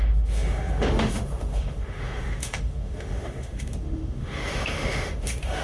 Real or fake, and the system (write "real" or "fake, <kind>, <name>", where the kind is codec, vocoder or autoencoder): fake, autoencoder, DAC-VAE